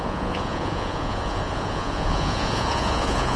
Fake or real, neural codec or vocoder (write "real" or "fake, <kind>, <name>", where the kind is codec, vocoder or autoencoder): fake, vocoder, Vocos